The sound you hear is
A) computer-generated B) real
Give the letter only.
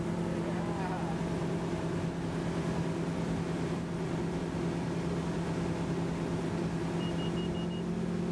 B